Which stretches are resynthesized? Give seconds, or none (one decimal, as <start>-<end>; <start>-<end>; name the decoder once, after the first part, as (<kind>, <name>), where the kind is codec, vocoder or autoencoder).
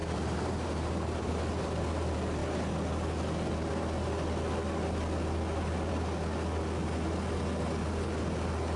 0.0-1.3 (vocoder, BigVGAN v2)